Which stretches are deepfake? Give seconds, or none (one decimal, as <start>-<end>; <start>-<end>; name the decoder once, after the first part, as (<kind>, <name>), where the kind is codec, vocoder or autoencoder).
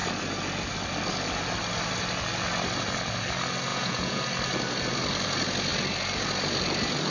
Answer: 3.7-4.2 (vocoder, Vocos)